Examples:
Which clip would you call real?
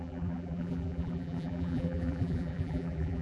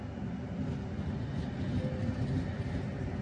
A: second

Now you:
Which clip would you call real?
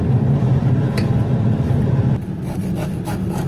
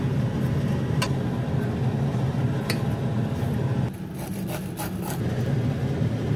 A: second